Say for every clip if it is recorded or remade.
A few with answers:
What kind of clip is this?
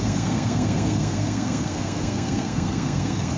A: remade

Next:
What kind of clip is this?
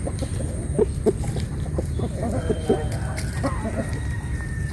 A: recorded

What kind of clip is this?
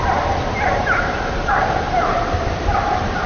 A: recorded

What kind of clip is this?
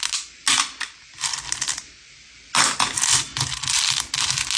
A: recorded